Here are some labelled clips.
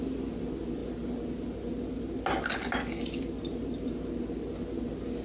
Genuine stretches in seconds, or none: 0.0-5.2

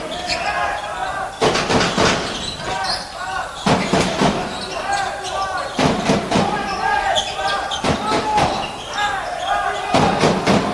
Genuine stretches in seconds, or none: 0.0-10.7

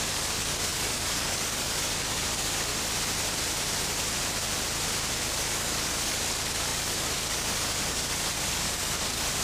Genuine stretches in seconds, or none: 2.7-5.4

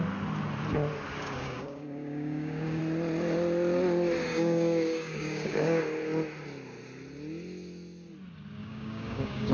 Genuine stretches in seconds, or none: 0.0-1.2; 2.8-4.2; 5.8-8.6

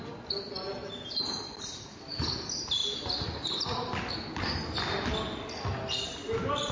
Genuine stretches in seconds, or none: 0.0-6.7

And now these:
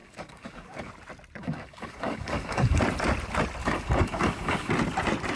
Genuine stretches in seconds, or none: 0.9-1.4; 2.8-3.6; 4.7-5.4

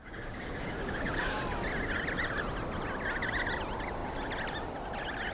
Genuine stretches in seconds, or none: 1.4-5.3